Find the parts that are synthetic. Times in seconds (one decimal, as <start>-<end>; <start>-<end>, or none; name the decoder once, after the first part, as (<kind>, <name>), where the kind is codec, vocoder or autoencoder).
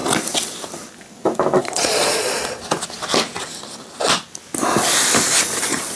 1.6-2.6 (vocoder, Vocos); 5.6-6.0